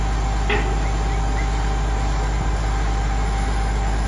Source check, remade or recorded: recorded